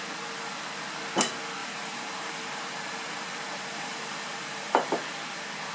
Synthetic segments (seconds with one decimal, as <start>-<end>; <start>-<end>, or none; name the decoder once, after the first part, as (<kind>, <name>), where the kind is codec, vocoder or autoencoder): 1.6-5.0 (vocoder, BigVGAN v2)